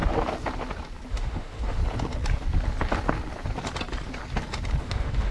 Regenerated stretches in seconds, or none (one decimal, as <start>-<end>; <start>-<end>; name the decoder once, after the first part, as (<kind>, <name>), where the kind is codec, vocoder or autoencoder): 1.1-1.8 (autoencoder, DAC-VAE); 4.8-5.3